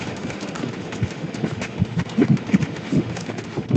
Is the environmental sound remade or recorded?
remade